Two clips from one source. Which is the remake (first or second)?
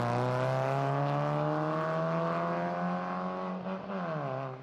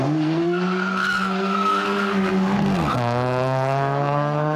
second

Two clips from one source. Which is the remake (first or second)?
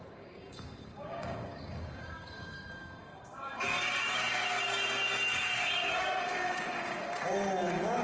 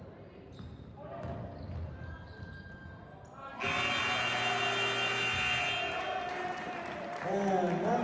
first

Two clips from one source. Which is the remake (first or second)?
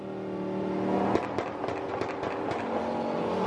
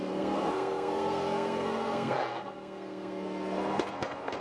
second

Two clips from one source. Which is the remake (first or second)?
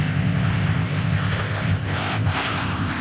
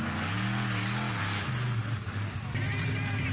first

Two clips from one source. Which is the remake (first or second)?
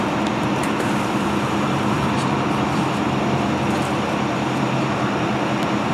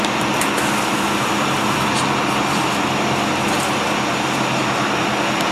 first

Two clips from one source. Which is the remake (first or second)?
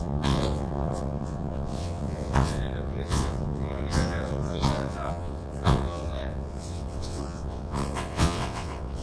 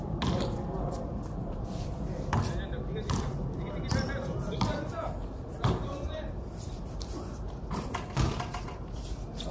first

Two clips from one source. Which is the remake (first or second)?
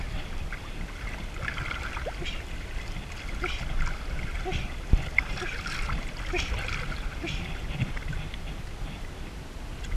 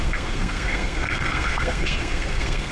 second